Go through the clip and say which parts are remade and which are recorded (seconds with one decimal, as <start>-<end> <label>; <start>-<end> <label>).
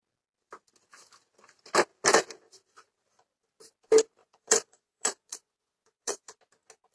0.0-4.2 recorded; 4.2-6.4 remade; 6.4-6.9 recorded